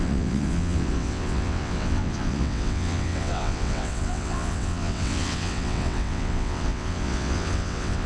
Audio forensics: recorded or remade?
remade